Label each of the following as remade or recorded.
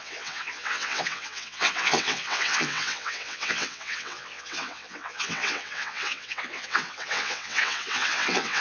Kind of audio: remade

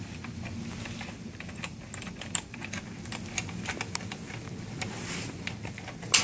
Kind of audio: recorded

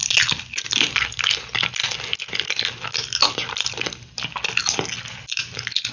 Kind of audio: recorded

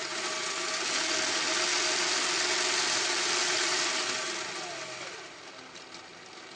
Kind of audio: recorded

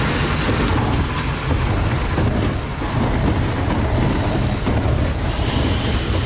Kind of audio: recorded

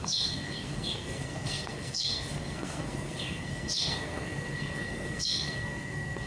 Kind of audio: remade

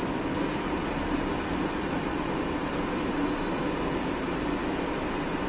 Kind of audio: recorded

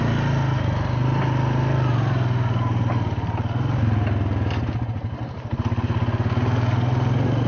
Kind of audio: recorded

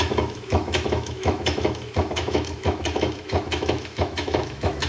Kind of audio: remade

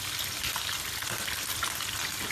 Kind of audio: recorded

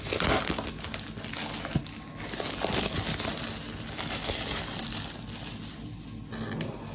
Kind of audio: recorded